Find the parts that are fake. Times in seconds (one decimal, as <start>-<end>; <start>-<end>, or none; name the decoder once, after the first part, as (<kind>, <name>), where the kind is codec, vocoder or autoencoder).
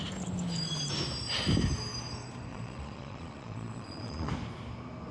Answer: 2.5-4.3 (vocoder, Vocos)